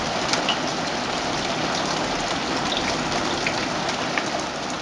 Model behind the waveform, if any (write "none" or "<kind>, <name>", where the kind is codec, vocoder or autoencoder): none